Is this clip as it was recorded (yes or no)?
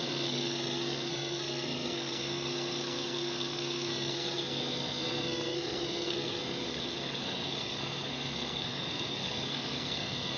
no